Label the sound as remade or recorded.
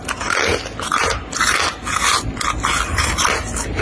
recorded